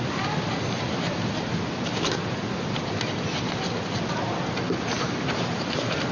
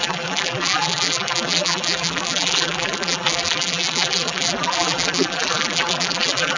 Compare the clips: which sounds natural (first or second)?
first